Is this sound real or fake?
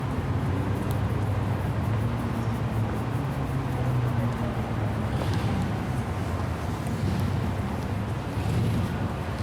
real